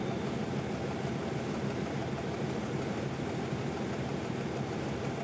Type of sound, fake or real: real